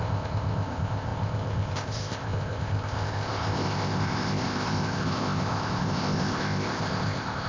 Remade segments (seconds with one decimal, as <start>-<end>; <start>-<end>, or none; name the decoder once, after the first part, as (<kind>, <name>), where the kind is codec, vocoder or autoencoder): 0.0-7.5 (codec, ZipCodec)